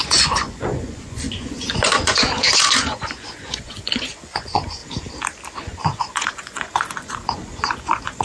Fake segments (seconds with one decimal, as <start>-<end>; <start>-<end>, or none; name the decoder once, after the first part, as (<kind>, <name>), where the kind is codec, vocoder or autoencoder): 0.0-4.8 (vocoder, Vocos); 5.6-8.2